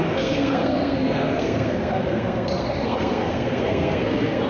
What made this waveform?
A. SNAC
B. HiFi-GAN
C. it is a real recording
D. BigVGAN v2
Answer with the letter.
A